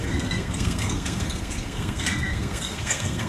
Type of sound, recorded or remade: remade